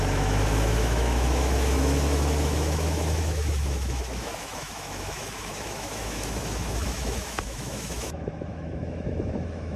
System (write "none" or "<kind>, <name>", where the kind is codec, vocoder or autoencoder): autoencoder, DAC-VAE